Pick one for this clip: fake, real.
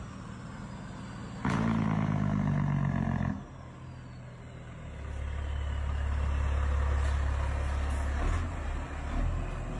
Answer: real